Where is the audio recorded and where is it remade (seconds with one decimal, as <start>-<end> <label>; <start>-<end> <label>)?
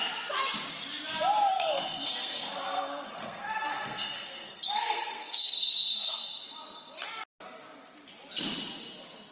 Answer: 0.0-1.5 recorded; 1.5-6.3 remade; 6.3-9.3 recorded